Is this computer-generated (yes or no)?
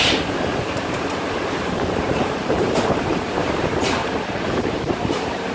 yes